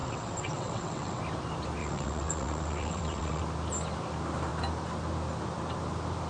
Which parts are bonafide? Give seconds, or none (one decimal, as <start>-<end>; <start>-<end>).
1.2-1.8; 3.4-6.3